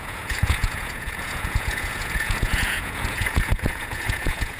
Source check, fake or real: fake